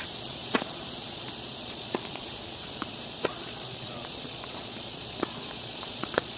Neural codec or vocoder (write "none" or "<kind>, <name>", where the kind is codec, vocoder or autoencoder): vocoder, Vocos